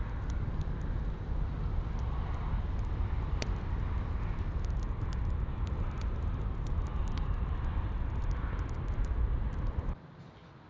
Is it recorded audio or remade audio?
recorded